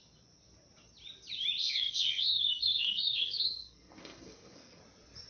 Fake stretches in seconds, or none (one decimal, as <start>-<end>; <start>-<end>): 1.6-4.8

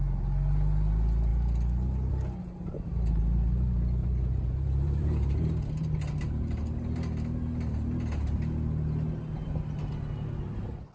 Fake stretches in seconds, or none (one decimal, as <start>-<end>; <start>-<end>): 4.0-5.6

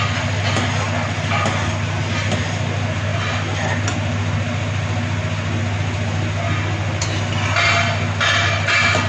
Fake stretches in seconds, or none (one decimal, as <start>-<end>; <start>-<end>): none

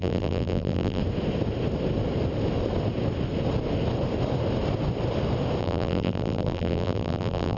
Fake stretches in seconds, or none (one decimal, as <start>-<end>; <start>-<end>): 0.0-1.0; 5.6-7.6